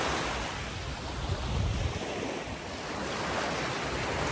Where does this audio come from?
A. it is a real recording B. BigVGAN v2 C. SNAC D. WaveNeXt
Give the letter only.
A